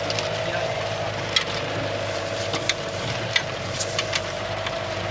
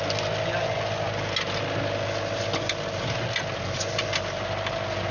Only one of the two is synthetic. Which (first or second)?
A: first